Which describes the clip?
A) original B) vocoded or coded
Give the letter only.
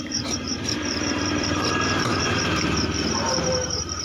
B